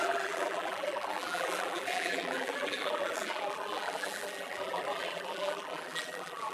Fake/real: fake